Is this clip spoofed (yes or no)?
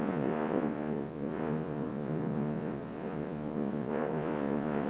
yes